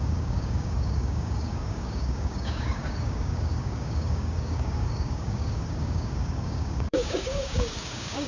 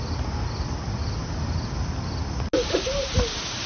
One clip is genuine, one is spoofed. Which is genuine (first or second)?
second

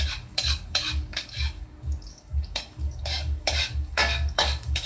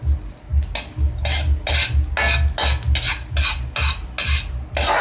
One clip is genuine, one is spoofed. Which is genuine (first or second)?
second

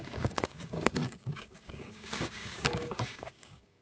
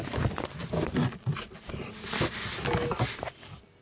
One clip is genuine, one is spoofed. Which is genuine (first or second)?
second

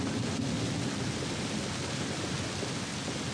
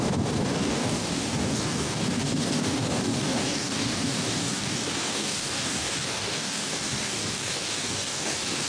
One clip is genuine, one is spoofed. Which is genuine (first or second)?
first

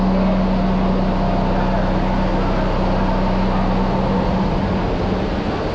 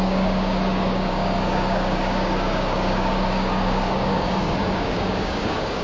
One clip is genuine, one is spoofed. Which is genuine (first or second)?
first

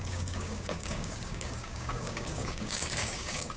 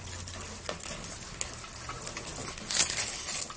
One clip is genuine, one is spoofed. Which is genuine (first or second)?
second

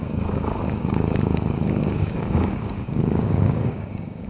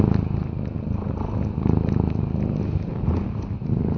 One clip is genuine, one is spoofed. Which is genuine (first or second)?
second